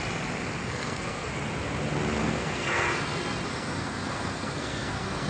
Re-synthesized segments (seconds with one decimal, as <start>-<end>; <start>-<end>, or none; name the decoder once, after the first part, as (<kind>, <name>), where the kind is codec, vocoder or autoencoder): 0.6-1.3 (codec, SNAC); 2.2-3.0; 3.5-5.3